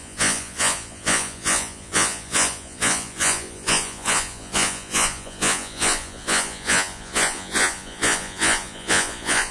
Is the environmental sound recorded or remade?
remade